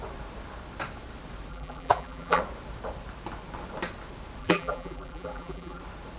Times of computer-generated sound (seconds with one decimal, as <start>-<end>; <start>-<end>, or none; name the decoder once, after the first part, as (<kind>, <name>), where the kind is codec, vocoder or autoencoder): 1.5-2.4 (vocoder, BigVGAN v2); 4.4-5.8